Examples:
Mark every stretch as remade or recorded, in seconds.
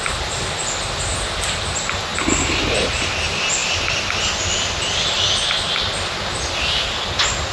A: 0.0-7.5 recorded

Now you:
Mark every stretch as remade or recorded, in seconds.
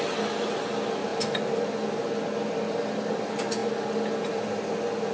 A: 0.0-5.1 recorded